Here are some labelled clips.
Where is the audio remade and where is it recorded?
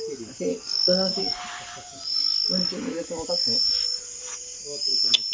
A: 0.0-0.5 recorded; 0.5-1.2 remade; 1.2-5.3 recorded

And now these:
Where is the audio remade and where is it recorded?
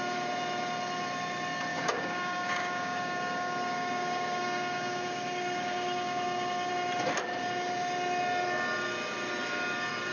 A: 0.0-1.7 recorded; 1.7-6.7 remade; 6.7-10.1 recorded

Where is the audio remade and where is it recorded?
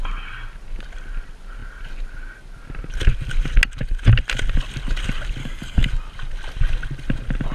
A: 0.0-5.4 recorded; 5.4-5.9 remade; 5.9-7.5 recorded